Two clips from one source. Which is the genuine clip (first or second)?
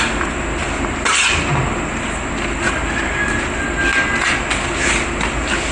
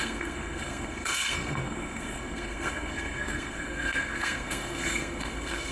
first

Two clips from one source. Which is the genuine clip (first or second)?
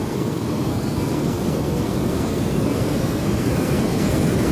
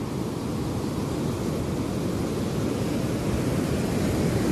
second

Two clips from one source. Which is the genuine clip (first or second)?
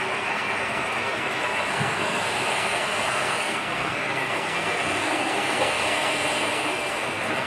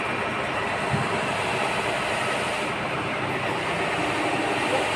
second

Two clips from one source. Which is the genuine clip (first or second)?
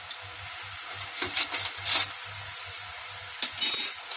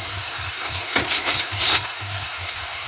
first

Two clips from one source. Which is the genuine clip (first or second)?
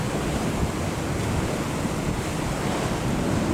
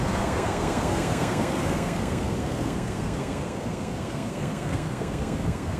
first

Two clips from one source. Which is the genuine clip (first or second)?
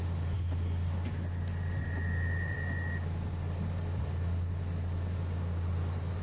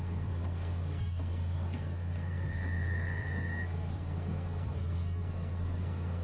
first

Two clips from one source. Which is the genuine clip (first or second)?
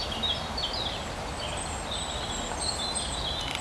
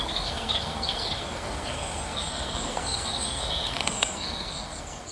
first